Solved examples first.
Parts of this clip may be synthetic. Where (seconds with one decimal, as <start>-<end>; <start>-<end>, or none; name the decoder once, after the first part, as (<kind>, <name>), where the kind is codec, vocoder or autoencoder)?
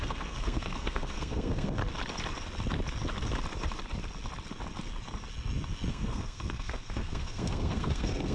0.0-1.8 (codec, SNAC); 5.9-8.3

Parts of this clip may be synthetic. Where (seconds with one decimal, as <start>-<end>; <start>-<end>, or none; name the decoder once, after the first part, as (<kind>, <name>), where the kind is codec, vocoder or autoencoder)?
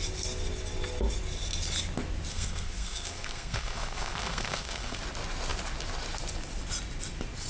2.3-5.0 (codec, SNAC)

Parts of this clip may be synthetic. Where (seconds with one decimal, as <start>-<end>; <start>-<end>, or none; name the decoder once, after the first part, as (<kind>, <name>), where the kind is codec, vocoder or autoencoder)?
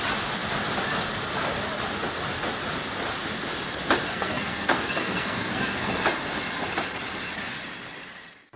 4.1-6.0 (codec, SNAC)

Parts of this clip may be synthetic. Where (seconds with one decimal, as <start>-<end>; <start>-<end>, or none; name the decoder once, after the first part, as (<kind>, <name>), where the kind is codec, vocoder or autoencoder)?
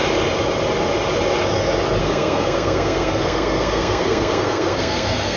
2.0-5.4 (codec, SNAC)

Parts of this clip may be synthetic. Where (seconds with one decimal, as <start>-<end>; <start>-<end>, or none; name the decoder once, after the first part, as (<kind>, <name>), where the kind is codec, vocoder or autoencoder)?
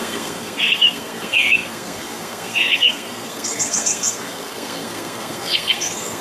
0.0-6.2 (codec, SNAC)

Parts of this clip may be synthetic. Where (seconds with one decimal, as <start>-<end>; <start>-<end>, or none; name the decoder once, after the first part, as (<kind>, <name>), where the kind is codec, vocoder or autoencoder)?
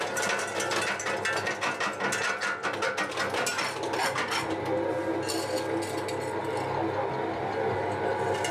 none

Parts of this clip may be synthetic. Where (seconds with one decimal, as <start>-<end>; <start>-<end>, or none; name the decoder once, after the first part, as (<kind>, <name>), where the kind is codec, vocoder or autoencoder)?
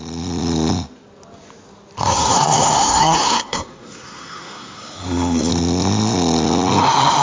2.0-5.5 (codec, SNAC)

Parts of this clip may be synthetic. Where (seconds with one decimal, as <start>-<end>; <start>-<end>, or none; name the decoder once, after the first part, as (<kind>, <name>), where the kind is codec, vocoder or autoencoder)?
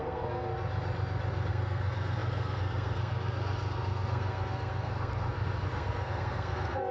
0.0-0.5 (codec, SNAC); 1.5-6.9